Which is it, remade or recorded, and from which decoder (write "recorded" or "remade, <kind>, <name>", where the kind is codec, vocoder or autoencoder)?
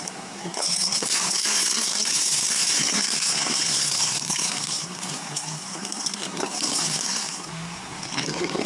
remade, codec, SNAC